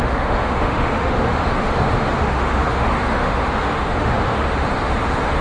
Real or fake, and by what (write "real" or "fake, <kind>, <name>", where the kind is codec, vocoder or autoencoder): fake, autoencoder, DAC-VAE